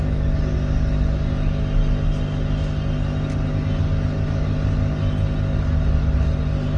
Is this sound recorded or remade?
recorded